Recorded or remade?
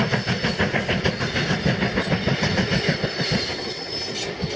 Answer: recorded